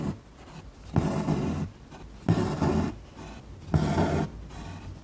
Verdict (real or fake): real